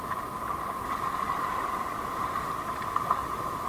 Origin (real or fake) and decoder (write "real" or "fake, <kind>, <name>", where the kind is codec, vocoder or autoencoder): real